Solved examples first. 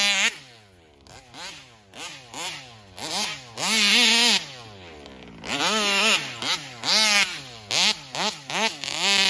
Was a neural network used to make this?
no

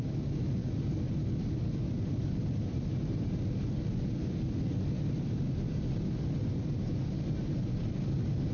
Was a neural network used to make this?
no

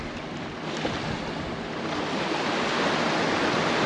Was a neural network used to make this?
no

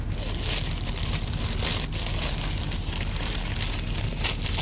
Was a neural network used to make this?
no